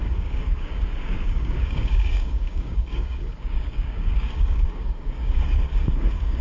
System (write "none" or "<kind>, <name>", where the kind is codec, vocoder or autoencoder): codec, DAC